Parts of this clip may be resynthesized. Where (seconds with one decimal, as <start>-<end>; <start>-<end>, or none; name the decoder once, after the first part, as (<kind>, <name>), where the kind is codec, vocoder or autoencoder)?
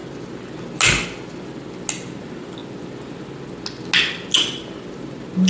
none